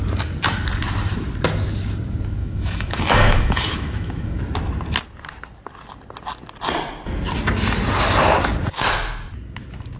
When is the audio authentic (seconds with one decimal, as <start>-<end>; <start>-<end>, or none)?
0.0-2.4; 4.4-10.0